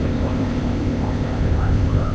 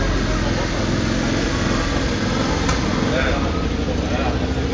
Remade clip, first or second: first